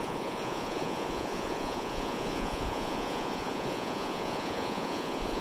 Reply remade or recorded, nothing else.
remade